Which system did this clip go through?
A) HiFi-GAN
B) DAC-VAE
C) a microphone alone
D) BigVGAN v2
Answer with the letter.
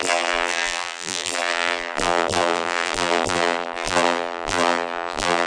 D